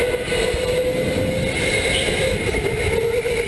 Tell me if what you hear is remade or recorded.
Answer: recorded